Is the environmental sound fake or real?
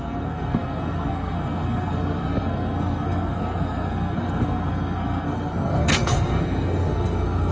fake